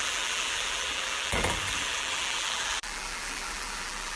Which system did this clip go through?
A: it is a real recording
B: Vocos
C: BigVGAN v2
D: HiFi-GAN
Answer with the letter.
C